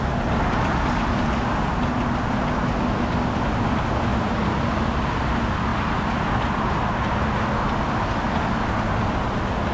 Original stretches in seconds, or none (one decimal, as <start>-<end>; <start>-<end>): 0.0-9.7